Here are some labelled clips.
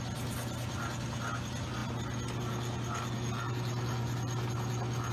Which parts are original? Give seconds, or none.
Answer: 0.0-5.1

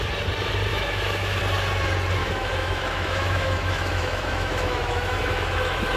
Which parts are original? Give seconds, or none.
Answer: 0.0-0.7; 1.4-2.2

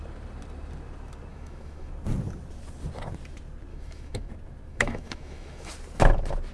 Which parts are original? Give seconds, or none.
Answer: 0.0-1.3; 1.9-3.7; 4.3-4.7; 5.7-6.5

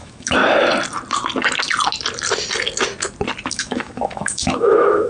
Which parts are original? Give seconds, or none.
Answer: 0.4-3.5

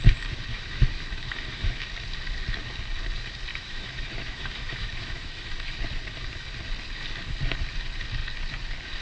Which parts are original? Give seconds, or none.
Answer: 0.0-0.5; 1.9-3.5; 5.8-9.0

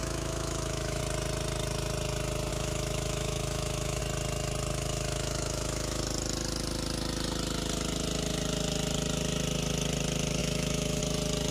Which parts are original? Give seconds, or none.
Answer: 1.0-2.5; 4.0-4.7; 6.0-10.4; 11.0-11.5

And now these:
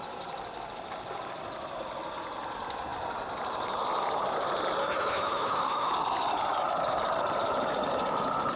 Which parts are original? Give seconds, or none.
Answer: 0.0-4.8; 5.9-8.6

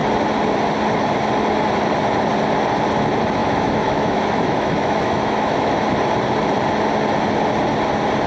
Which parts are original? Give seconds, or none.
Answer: 0.0-3.4; 5.8-8.3